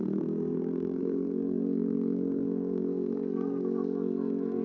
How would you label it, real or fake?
fake